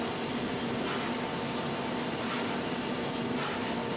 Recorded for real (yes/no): yes